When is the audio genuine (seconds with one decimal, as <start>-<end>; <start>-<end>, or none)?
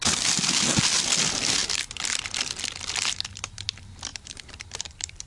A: 0.0-4.1